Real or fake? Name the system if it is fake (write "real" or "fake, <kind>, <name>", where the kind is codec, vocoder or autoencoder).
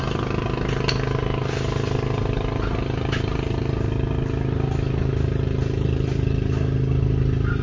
real